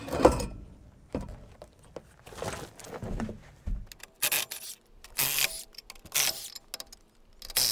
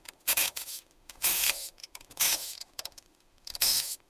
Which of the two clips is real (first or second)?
first